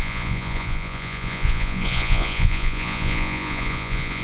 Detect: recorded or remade remade